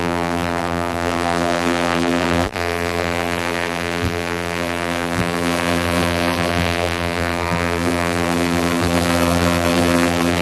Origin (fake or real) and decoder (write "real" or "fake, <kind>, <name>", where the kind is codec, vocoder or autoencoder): fake, vocoder, BigVGAN v2